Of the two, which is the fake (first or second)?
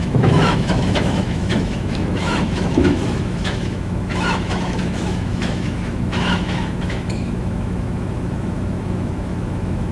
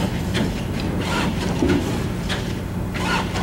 first